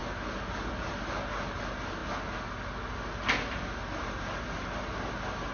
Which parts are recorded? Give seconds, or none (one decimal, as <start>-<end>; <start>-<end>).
0.0-5.5